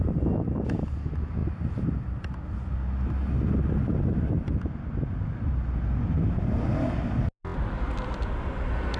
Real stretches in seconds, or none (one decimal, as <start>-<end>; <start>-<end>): 0.0-9.0